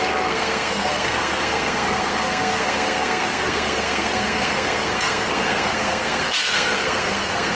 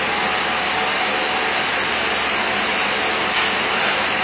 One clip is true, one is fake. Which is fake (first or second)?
first